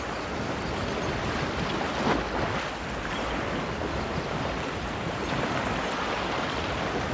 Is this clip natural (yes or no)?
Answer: yes